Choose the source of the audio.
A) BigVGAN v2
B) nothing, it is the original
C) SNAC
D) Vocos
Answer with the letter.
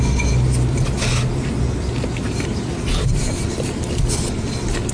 B